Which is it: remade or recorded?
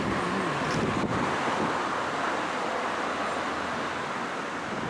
recorded